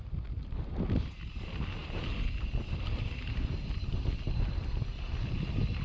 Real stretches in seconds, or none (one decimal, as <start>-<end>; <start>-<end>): 0.0-5.8